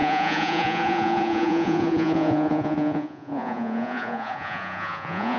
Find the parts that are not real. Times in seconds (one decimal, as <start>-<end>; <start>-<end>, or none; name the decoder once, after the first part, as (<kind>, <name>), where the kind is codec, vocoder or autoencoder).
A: 0.0-5.4 (vocoder, Vocos)